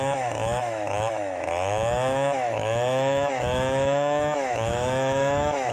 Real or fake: fake